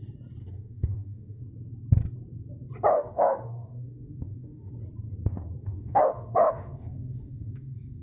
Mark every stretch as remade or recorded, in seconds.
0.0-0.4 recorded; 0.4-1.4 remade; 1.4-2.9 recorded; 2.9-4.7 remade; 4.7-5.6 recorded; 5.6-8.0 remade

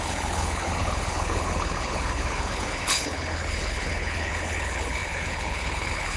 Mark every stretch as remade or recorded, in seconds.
0.0-6.2 remade

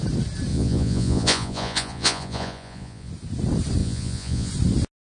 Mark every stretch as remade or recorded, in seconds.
0.0-0.5 recorded; 0.5-3.1 remade; 3.1-3.8 recorded; 3.8-4.5 remade; 4.5-5.1 recorded

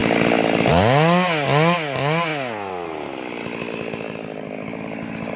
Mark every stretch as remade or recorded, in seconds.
0.0-5.4 recorded

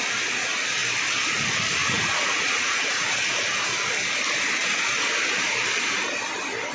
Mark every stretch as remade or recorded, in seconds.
0.0-1.8 recorded; 1.8-3.2 remade; 3.2-6.7 recorded

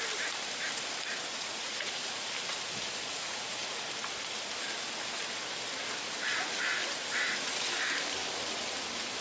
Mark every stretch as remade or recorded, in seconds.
0.0-1.3 recorded; 1.3-2.3 remade; 2.3-3.1 recorded; 3.1-3.8 remade; 3.8-6.8 recorded; 6.8-7.8 remade; 7.8-9.2 recorded

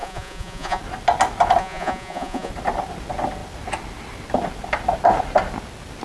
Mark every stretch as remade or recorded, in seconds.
0.0-0.8 remade; 0.8-1.6 recorded; 1.6-2.5 remade; 2.5-6.0 recorded

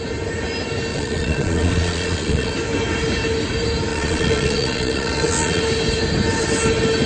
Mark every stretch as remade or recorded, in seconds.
0.0-0.9 recorded; 0.9-2.5 remade; 2.5-3.9 recorded; 3.9-5.6 remade; 5.6-7.1 recorded